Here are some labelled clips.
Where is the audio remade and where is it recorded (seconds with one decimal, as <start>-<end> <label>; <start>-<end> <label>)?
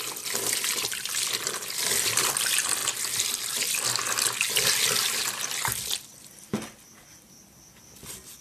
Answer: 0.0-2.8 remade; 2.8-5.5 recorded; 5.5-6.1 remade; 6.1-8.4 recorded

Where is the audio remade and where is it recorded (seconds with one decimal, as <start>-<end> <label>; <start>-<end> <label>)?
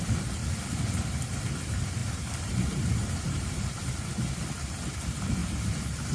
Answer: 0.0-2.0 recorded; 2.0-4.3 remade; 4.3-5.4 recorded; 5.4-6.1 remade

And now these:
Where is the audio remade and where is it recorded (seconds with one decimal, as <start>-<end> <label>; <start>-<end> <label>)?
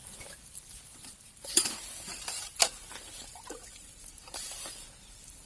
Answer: 0.0-5.5 remade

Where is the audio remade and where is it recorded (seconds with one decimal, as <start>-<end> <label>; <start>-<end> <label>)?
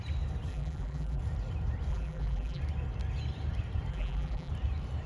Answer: 0.0-0.5 recorded; 0.5-1.2 remade; 1.2-1.9 recorded; 1.9-2.6 remade; 2.6-3.9 recorded; 3.9-4.5 remade; 4.5-5.1 recorded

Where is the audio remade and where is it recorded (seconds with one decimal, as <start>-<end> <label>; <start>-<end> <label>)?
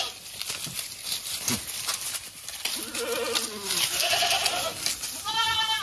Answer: 0.0-5.8 recorded